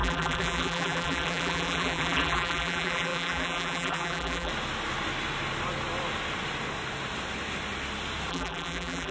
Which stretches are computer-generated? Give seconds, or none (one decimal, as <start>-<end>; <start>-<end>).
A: 0.0-4.5; 8.3-9.1